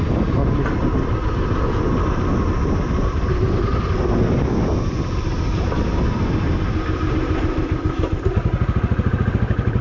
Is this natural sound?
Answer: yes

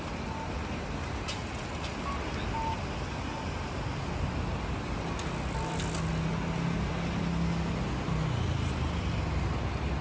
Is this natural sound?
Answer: yes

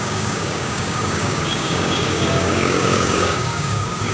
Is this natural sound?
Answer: no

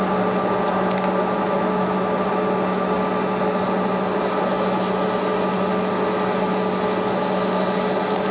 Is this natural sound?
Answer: yes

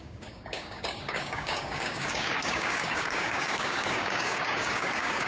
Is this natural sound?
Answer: no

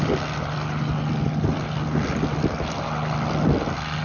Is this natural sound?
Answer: yes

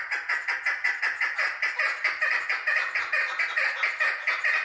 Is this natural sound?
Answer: yes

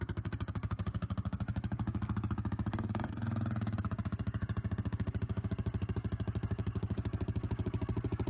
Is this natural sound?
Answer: no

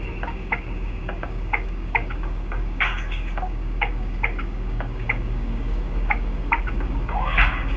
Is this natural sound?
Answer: no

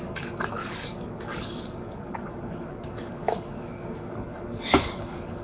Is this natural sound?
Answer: no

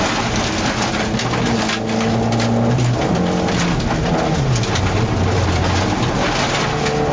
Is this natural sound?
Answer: yes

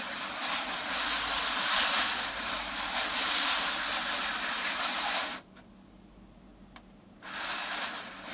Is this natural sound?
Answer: yes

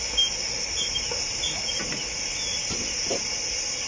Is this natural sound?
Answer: yes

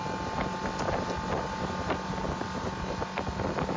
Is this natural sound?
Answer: yes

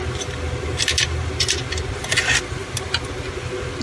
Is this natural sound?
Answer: yes